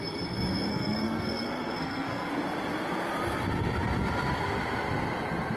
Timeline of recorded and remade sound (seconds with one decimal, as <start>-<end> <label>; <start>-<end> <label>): 0.0-0.7 recorded; 0.7-2.3 remade; 2.3-5.6 recorded